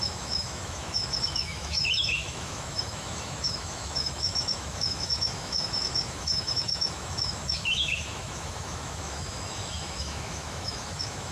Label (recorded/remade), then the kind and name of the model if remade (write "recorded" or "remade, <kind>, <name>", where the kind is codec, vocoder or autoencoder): remade, autoencoder, DAC-VAE